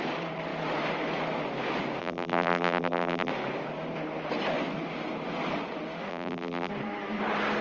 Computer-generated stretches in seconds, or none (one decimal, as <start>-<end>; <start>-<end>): 2.0-3.3; 6.1-6.7